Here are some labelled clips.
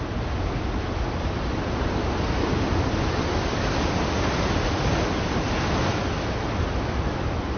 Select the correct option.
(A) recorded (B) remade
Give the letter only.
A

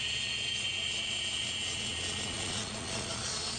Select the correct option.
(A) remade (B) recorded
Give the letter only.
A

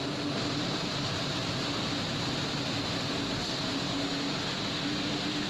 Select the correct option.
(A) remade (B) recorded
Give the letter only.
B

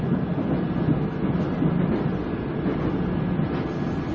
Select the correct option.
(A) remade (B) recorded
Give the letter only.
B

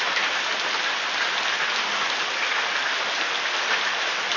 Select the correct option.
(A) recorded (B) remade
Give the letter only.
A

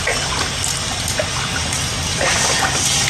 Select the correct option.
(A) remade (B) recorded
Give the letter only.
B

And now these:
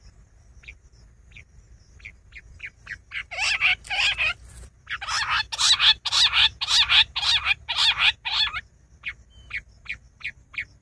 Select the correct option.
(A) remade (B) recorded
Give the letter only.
B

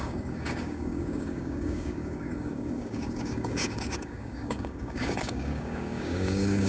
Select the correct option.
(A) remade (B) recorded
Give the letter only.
A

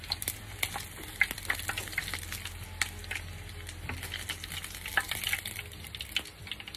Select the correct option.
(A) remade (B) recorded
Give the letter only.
B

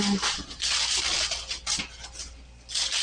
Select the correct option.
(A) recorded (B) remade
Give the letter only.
A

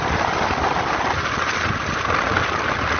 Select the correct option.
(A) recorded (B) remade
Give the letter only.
A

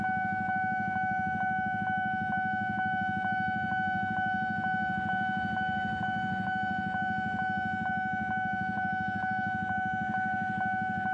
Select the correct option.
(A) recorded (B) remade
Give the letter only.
A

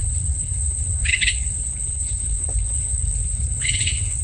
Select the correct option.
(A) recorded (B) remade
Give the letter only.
B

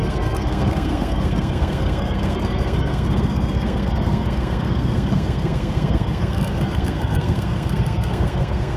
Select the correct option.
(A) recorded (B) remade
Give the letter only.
B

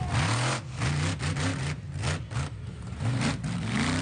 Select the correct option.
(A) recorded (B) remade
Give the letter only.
A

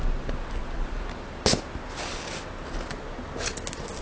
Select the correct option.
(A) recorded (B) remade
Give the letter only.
A